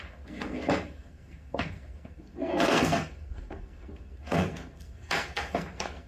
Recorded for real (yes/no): no